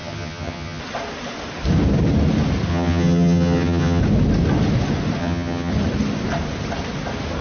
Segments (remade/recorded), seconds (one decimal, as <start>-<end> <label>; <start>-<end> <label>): 0.0-0.8 remade; 0.8-2.7 recorded; 2.7-4.0 remade; 4.0-5.2 recorded; 5.2-5.7 remade; 5.7-7.4 recorded